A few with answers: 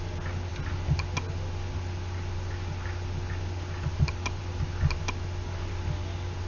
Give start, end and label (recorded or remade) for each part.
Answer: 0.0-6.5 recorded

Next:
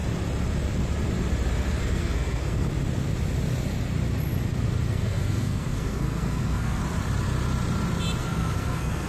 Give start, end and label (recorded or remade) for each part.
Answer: 0.0-1.8 recorded; 1.8-2.7 remade; 2.7-4.9 recorded; 4.9-6.8 remade; 6.8-8.2 recorded; 8.2-9.1 remade

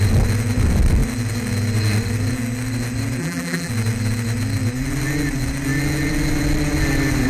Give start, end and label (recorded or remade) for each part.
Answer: 0.0-3.2 recorded; 3.2-3.7 remade; 3.7-7.3 recorded

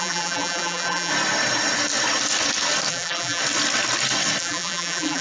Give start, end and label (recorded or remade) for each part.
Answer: 0.0-1.1 remade; 1.1-2.9 recorded; 2.9-3.4 remade; 3.4-4.4 recorded; 4.4-5.2 remade

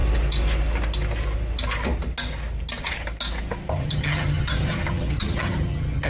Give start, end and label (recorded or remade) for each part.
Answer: 0.0-3.7 recorded; 3.7-6.1 remade

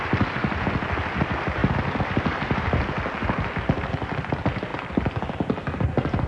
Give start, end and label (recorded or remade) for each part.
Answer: 0.0-6.3 recorded